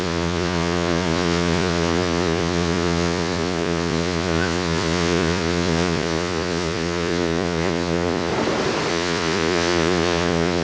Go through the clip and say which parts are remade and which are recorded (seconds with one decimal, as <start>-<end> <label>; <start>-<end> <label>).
0.0-8.3 remade; 8.3-8.9 recorded; 8.9-10.6 remade